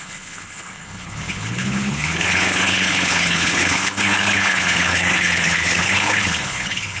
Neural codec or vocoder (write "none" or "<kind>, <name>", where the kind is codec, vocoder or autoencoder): codec, HILCodec